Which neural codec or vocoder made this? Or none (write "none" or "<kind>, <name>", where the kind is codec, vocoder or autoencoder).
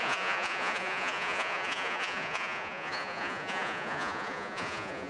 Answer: vocoder, Vocos